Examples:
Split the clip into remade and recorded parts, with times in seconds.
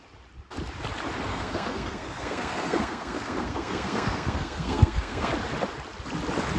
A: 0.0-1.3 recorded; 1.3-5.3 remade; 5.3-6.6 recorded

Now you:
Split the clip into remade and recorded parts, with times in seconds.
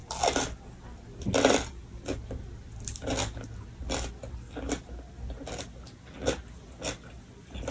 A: 0.0-7.7 recorded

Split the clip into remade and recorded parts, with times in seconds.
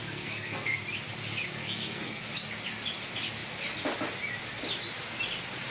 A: 0.0-0.8 remade; 0.8-1.6 recorded; 1.6-2.2 remade; 2.2-5.7 recorded